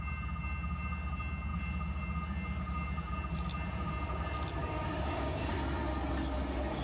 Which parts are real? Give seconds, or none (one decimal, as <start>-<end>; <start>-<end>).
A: 0.0-4.6; 5.5-6.8